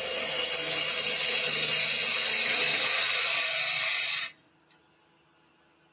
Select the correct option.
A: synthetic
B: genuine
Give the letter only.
B